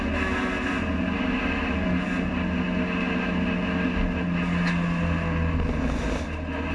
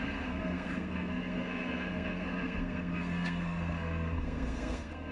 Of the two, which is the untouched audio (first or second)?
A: first